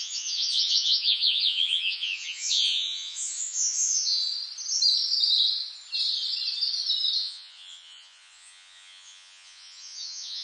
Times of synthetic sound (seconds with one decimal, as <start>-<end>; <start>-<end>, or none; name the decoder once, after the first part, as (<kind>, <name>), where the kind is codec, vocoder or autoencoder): 0.0-4.2 (vocoder, Vocos); 7.2-10.4